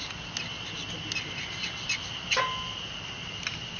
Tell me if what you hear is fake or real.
real